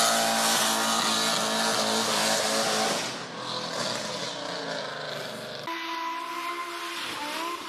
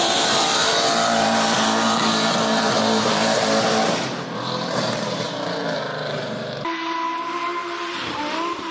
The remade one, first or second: second